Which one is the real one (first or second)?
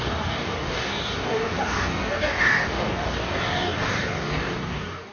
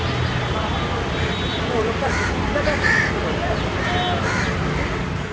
second